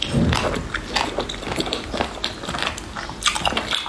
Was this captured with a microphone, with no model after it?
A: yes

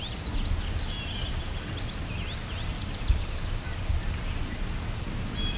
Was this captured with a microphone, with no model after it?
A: yes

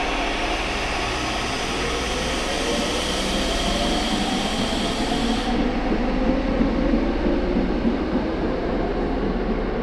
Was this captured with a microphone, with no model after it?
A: yes